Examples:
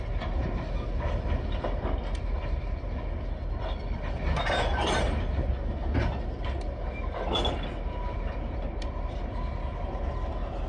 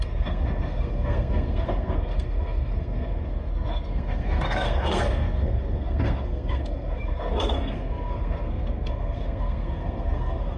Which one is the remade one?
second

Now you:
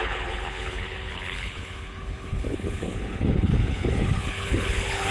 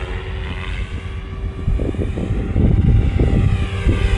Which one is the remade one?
first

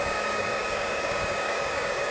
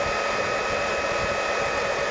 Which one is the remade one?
first